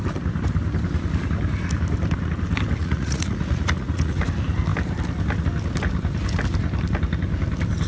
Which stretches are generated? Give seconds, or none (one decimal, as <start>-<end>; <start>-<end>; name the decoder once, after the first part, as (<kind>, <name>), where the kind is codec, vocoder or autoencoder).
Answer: 2.8-4.2 (vocoder, Vocos)